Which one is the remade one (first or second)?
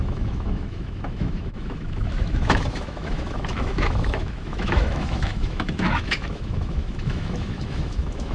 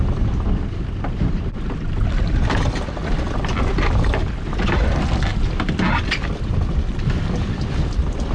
first